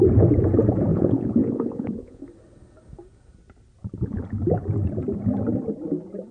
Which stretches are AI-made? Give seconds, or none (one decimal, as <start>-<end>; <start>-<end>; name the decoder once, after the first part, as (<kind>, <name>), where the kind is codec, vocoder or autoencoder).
0.9-2.2 (vocoder, Vocos)